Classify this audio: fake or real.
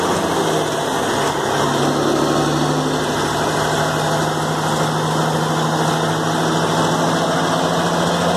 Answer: real